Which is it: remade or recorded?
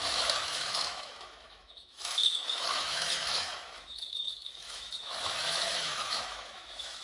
remade